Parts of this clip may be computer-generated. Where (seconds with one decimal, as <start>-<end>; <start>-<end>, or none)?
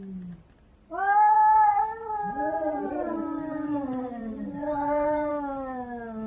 1.5-5.3